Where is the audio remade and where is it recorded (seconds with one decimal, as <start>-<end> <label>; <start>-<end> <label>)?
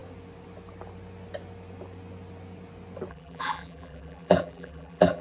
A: 0.0-3.1 recorded; 3.1-5.2 remade